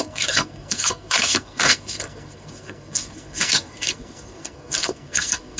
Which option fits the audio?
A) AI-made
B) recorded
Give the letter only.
A